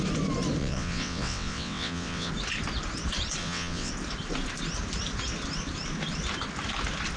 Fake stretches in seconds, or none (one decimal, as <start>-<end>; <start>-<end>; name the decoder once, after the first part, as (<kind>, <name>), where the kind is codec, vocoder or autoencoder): 0.6-2.3 (vocoder, WaveNeXt); 3.4-3.9